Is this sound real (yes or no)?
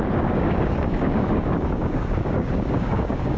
no